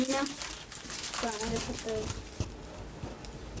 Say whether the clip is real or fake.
real